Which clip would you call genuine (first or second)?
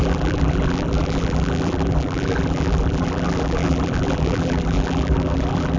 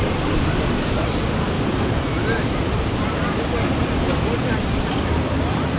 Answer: second